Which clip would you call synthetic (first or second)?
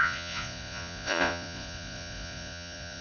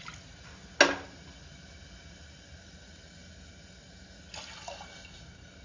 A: first